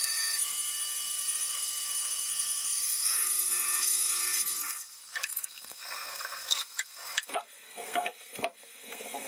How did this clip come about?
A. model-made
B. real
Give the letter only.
A